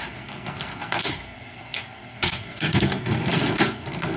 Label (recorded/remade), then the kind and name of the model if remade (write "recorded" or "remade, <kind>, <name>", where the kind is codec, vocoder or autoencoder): remade, codec, SNAC